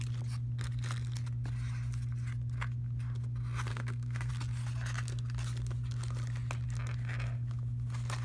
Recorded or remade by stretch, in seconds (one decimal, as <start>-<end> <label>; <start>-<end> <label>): 0.0-3.7 recorded; 3.7-4.3 remade; 4.3-8.2 recorded